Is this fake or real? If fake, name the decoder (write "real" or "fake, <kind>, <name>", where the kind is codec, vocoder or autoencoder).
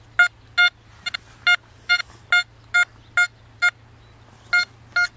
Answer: real